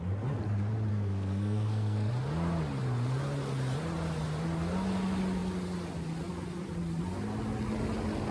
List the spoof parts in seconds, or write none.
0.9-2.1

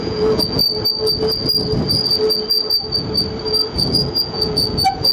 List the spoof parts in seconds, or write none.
0.0-0.6; 3.7-5.1

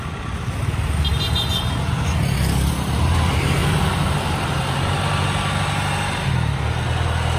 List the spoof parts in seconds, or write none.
none

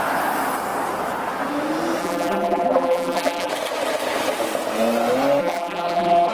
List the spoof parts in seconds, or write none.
2.0-3.5; 5.4-6.3

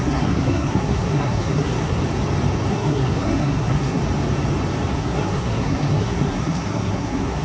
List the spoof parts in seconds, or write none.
0.0-2.0; 2.7-4.0; 5.0-7.4